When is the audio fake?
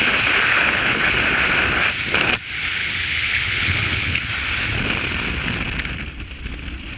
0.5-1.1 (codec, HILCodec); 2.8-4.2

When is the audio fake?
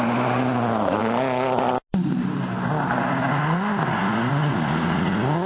none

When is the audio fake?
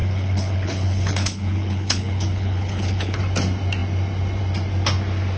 0.0-3.2 (codec, HILCodec)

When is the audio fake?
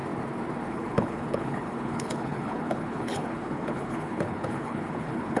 0.7-5.4 (codec, HILCodec)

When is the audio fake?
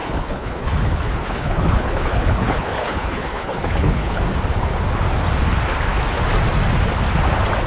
0.0-4.2 (codec, HILCodec)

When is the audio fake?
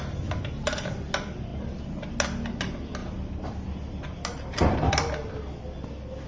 none